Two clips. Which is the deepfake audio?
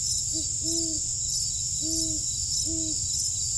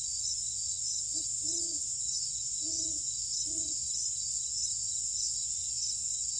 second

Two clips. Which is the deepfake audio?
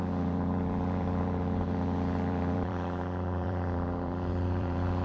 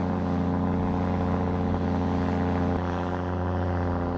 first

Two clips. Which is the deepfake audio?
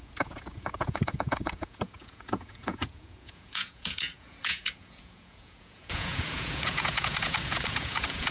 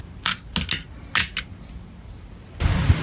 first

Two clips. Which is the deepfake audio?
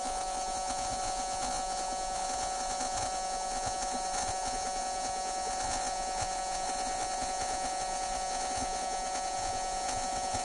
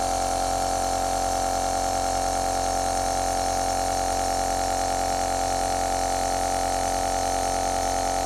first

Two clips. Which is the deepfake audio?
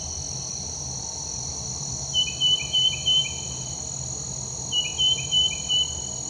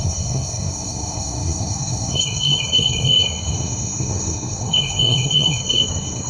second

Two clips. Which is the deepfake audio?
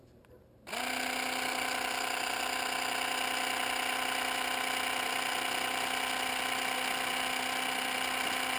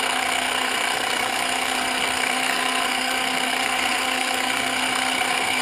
second